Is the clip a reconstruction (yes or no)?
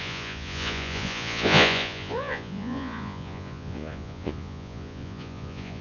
yes